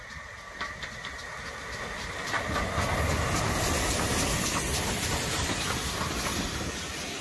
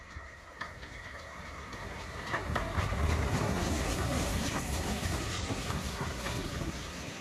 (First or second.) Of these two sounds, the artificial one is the second